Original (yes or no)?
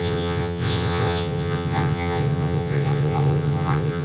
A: no